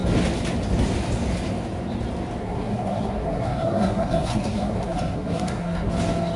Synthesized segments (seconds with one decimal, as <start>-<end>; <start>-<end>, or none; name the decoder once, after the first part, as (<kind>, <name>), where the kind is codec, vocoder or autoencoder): 2.4-5.9 (codec, SNAC)